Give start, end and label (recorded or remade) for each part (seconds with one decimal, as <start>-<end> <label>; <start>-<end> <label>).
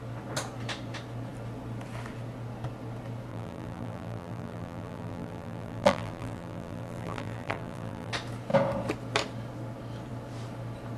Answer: 0.0-3.3 recorded; 3.3-8.1 remade; 8.1-11.0 recorded